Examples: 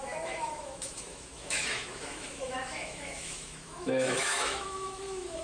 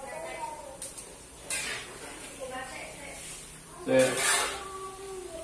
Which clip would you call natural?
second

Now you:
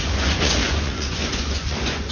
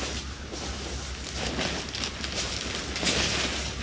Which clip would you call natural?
second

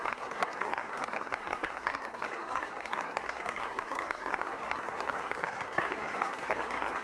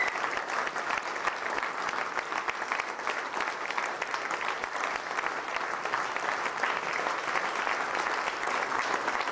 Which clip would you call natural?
second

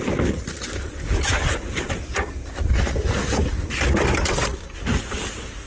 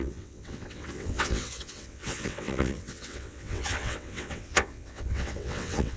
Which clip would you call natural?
first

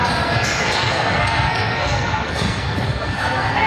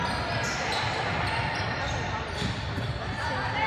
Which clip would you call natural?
second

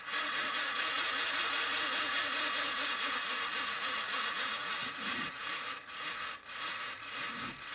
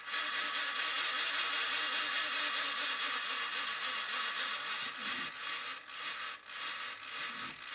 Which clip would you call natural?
second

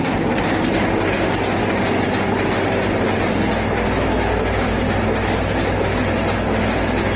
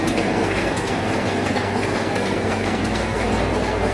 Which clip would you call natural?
first